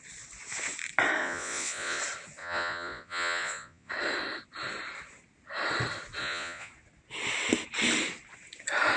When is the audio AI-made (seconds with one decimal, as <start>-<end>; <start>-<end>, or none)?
1.2-2.0; 2.4-3.9; 6.2-6.7